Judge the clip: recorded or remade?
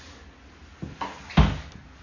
recorded